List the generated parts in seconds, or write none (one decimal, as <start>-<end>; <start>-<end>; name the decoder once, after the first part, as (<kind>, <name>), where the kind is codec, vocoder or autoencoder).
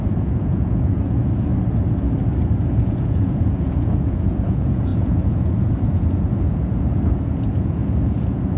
0.0-1.5 (vocoder, Vocos); 2.7-8.6